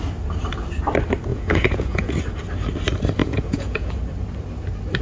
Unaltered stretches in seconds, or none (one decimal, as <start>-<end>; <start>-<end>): 0.0-1.3; 2.1-3.2; 3.9-5.0